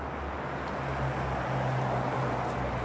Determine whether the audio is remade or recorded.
recorded